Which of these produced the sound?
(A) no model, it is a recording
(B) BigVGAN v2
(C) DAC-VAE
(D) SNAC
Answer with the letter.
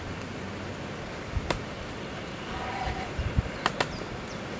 A